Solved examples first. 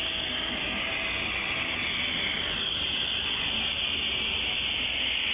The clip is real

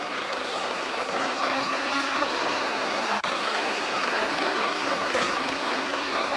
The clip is fake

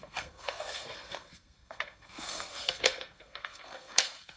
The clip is fake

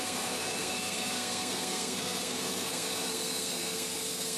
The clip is fake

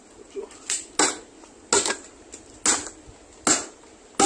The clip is real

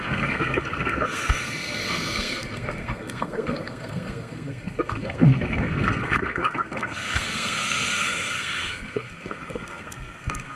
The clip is fake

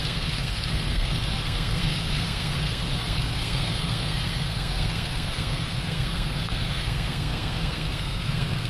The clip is fake